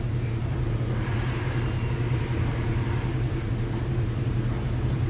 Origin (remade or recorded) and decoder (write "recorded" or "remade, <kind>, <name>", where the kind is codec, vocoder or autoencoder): remade, vocoder, BigVGAN v2